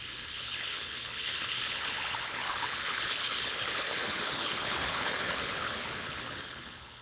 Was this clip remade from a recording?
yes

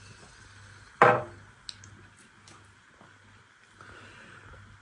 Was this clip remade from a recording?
no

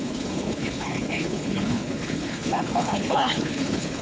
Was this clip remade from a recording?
yes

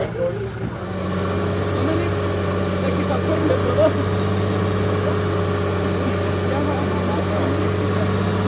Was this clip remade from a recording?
no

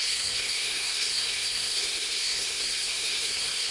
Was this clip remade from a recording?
yes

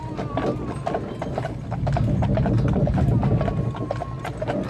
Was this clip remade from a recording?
no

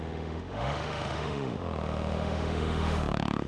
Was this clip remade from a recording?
yes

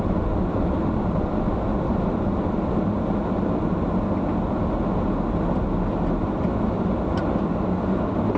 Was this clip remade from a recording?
no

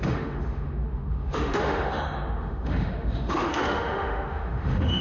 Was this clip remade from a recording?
yes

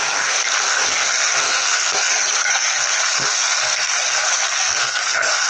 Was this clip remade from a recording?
yes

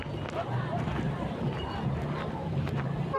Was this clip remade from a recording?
no